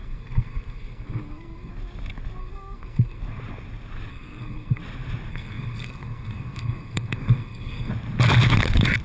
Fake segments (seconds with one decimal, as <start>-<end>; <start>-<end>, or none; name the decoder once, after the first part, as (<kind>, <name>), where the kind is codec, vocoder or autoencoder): 0.0-1.7 (codec, SNAC); 2.4-3.2; 4.1-4.8; 5.3-7.9